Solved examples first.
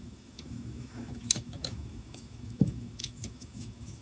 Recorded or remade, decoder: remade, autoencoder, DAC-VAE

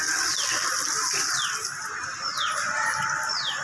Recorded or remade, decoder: recorded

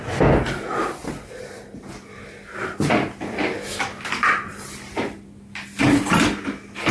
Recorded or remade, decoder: recorded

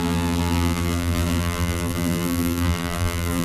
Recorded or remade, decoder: remade, vocoder, BigVGAN v2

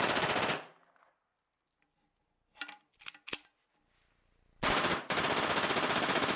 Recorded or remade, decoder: recorded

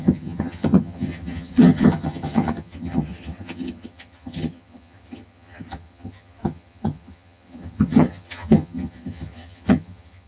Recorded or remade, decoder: remade, vocoder, HiFi-GAN